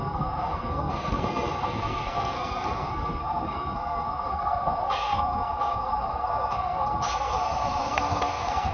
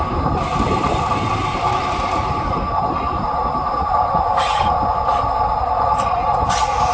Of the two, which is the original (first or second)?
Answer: second